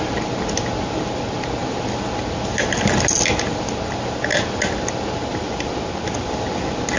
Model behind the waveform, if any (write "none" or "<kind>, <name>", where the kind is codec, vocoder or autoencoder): none